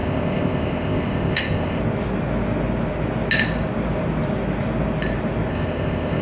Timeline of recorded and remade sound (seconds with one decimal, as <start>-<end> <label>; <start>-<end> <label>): 0.0-1.8 remade; 1.8-5.5 recorded; 5.5-6.2 remade